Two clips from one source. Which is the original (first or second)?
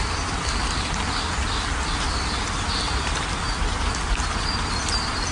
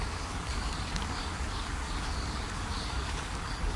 first